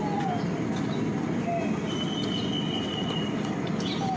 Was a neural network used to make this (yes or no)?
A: no